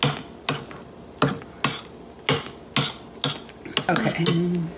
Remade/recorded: recorded